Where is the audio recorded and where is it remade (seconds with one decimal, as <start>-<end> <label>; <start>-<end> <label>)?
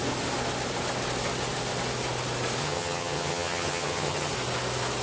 0.0-2.6 recorded; 2.6-4.3 remade; 4.3-5.0 recorded